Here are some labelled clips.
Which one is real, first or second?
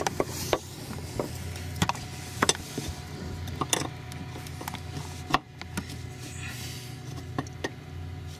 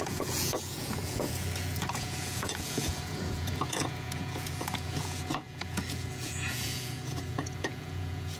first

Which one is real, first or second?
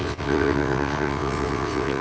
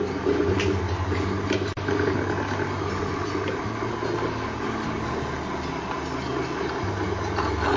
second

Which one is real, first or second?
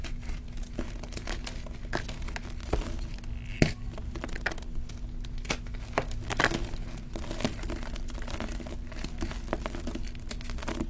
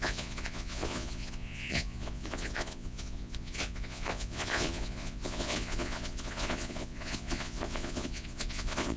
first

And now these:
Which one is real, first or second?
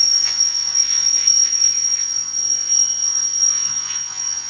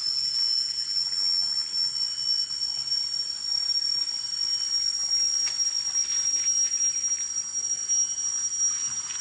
second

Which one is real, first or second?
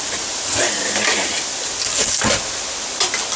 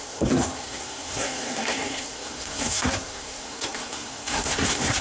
first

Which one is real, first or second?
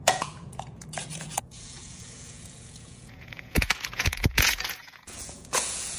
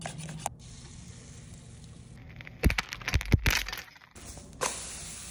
second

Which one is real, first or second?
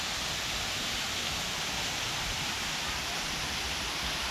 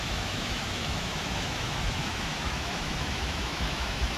first